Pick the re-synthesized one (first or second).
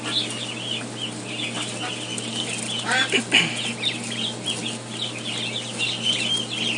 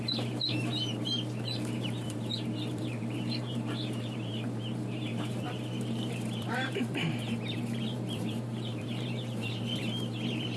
second